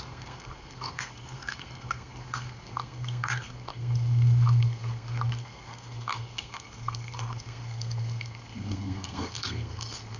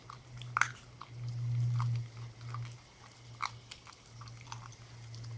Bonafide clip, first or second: second